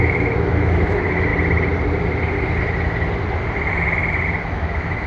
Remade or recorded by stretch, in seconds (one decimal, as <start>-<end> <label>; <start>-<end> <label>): 0.0-1.3 remade; 1.3-4.4 recorded; 4.4-5.1 remade